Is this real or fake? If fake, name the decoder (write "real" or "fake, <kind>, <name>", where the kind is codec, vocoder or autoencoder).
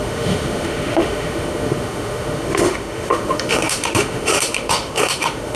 fake, autoencoder, DAC-VAE